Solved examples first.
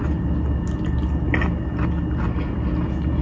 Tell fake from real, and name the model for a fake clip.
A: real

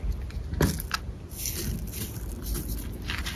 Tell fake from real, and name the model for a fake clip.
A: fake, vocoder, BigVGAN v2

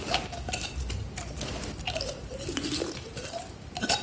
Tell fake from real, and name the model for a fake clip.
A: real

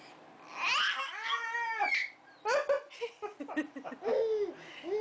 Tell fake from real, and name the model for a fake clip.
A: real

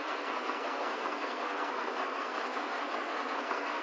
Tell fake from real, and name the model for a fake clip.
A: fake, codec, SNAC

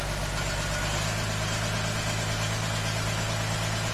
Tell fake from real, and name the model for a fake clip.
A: real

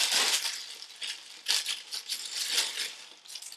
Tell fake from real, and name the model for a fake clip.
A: real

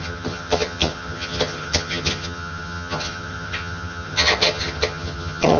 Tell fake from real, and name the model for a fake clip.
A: fake, vocoder, HiFi-GAN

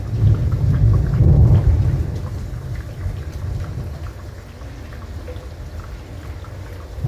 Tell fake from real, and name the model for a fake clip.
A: real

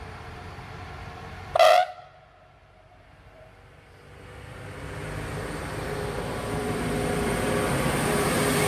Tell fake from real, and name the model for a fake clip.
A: fake, vocoder, BigVGAN v2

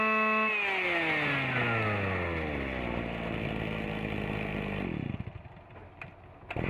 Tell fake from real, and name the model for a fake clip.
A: real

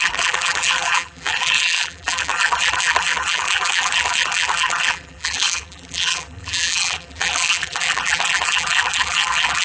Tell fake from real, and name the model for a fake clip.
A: fake, vocoder, BigVGAN v2